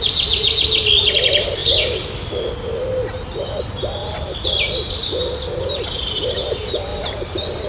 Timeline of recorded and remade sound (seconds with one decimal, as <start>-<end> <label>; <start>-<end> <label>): 0.0-1.6 recorded; 1.6-2.5 remade; 2.5-4.0 recorded; 4.0-4.7 remade; 4.7-6.9 recorded; 6.9-7.7 remade